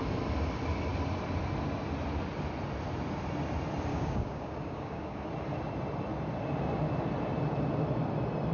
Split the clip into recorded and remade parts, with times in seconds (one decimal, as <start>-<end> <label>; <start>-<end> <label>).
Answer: 0.0-3.9 recorded; 3.9-5.3 remade; 5.3-8.5 recorded